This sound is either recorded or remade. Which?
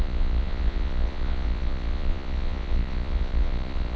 remade